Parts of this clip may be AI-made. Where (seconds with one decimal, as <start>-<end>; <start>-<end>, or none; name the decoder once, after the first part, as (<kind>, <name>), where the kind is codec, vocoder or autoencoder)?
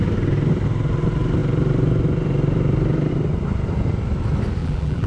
4.6-5.1 (vocoder, BigVGAN v2)